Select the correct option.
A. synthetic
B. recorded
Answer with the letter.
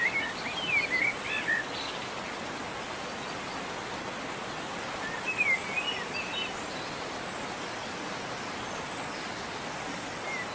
B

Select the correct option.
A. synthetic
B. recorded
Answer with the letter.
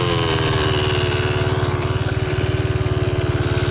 B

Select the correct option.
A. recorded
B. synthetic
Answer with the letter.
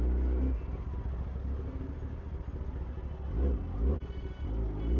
A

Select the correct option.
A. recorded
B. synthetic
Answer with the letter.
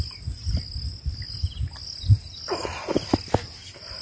A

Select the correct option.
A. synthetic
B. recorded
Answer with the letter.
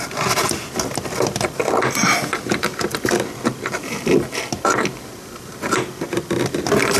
B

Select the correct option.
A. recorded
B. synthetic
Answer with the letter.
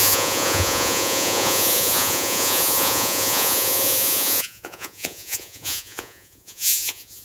B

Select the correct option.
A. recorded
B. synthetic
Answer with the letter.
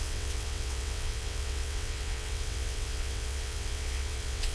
B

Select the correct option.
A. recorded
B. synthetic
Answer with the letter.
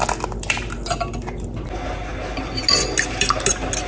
A